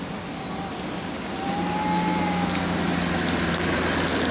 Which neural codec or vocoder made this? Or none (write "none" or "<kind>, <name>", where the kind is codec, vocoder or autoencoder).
none